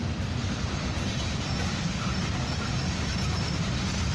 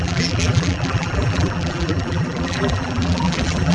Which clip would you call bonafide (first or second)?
first